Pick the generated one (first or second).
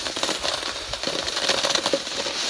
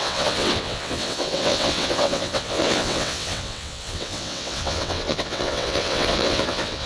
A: second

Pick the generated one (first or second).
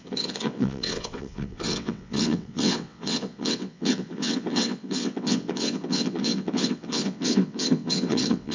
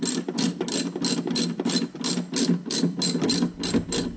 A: first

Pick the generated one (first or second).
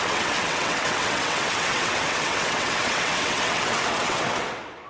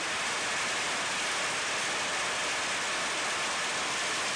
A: first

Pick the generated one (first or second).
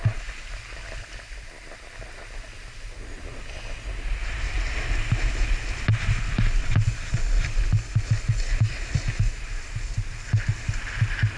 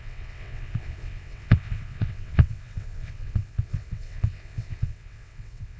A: second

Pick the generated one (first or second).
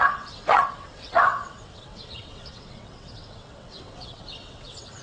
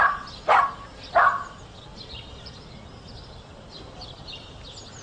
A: first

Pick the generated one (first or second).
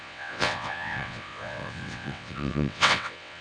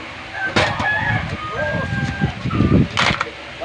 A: first